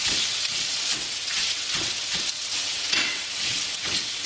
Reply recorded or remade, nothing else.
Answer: remade